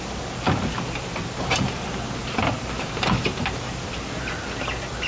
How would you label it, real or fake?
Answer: real